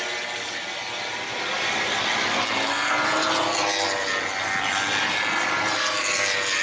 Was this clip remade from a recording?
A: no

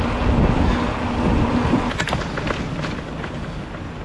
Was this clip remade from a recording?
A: no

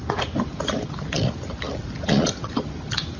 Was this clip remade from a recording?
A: no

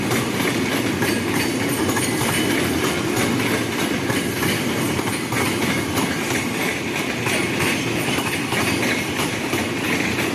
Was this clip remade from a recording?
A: no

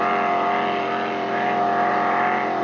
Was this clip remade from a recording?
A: no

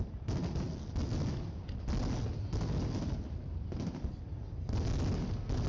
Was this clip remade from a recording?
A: no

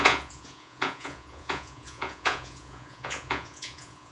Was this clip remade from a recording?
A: yes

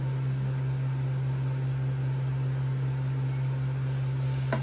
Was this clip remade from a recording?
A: no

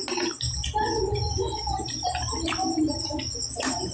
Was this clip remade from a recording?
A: no